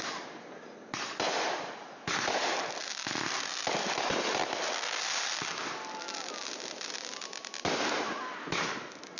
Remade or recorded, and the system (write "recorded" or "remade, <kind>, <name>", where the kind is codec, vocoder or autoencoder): recorded